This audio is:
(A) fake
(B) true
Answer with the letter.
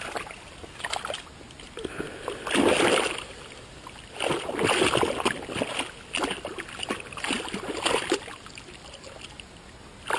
B